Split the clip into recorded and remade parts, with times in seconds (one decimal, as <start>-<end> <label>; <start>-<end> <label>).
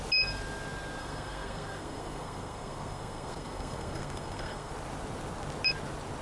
0.0-1.0 recorded; 1.0-4.7 remade; 4.7-6.2 recorded